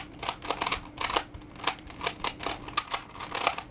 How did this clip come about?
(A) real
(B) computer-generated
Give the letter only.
A